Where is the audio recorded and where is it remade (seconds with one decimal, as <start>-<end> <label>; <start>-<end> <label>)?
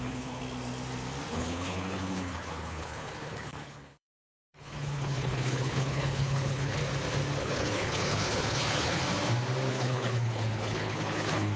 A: 0.0-0.4 remade; 0.4-1.3 recorded; 1.3-6.8 remade; 6.8-7.4 recorded; 7.4-9.0 remade; 9.0-9.7 recorded; 9.7-11.6 remade